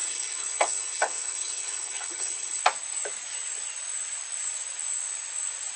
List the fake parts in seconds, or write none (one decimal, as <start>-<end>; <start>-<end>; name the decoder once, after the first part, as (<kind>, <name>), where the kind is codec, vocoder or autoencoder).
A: 0.0-2.6 (codec, HILCodec)